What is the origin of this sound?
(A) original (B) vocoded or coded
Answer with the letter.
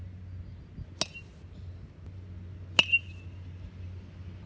A